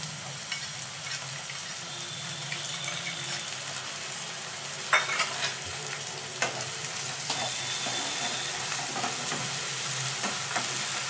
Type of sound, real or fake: real